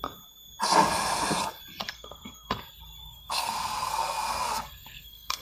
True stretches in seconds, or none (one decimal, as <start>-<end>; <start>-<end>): 0.0-1.8; 2.6-3.0